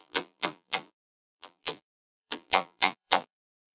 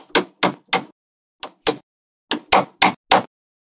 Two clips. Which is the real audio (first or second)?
second